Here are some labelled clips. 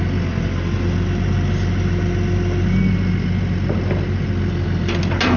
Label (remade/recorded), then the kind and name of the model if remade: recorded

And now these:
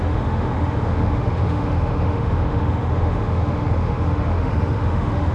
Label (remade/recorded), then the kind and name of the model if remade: remade, autoencoder, DAC-VAE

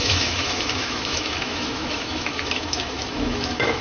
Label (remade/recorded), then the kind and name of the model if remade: remade, autoencoder, DAC-VAE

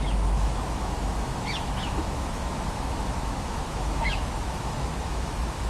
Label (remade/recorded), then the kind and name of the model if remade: remade, autoencoder, DAC-VAE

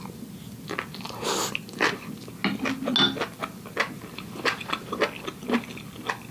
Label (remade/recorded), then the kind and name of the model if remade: recorded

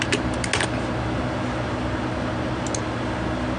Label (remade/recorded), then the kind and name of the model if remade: recorded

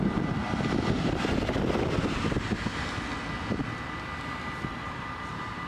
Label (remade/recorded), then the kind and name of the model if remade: recorded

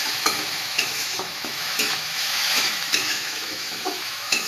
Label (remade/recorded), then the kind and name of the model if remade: remade, autoencoder, DAC-VAE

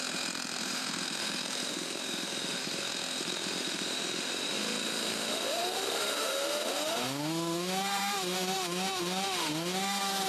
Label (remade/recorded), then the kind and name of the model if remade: remade, autoencoder, DAC-VAE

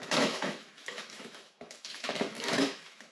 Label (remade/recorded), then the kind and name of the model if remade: remade, autoencoder, DAC-VAE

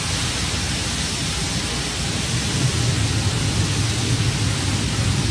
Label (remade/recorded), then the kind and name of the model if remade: recorded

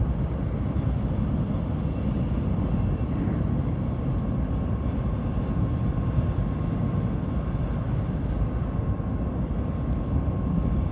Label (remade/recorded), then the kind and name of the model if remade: recorded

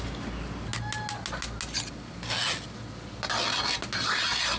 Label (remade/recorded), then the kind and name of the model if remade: recorded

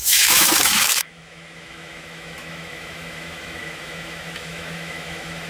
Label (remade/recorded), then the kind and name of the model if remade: remade, autoencoder, DAC-VAE